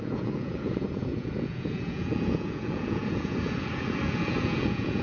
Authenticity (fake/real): fake